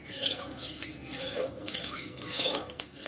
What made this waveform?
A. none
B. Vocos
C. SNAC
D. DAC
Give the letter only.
C